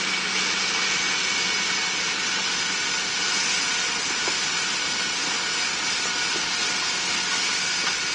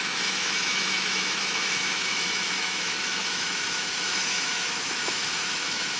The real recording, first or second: first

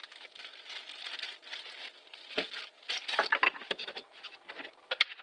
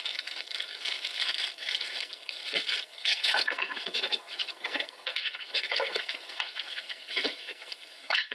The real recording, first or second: first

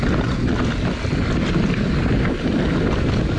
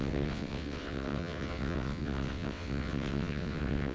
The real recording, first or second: first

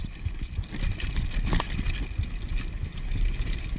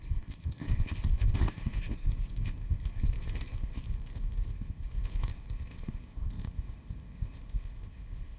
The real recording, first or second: first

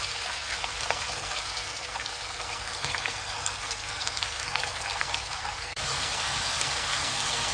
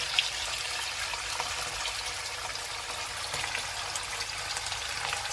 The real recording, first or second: second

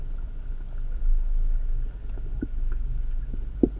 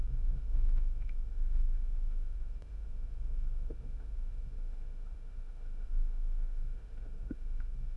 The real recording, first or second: first